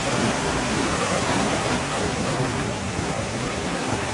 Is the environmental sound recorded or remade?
remade